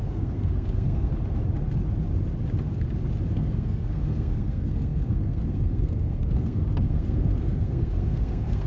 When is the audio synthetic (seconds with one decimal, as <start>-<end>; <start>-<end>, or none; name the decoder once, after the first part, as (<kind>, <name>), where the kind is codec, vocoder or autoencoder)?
0.0-1.1 (codec, SNAC); 3.3-8.7